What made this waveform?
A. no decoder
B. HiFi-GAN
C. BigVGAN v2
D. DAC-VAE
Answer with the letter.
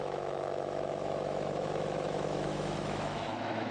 D